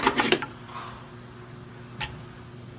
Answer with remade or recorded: recorded